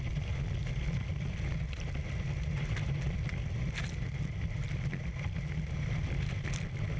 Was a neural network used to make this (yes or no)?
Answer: no